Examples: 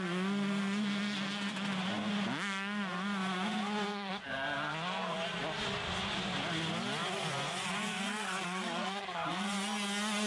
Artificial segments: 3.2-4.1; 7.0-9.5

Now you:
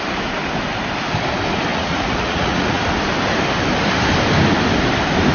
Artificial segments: 1.7-2.8

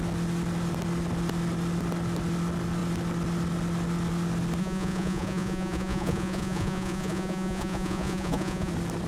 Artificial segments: 4.6-8.7

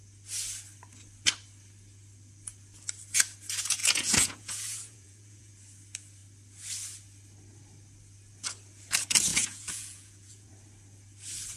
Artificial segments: 3.8-5.5; 9.3-10.5